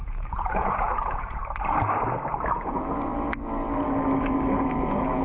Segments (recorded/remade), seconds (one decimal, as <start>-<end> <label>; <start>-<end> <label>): 0.0-1.4 remade; 1.4-2.3 recorded; 2.3-3.1 remade; 3.1-4.6 recorded; 4.6-5.2 remade